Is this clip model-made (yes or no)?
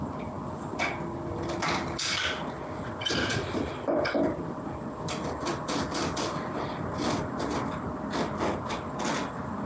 no